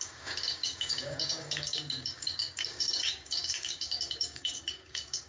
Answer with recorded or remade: remade